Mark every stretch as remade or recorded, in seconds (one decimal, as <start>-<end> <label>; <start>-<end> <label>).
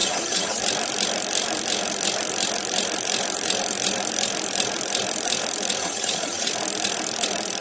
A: 0.0-0.6 remade; 0.6-5.8 recorded; 5.8-6.5 remade; 6.5-7.6 recorded